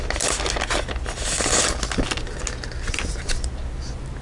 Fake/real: real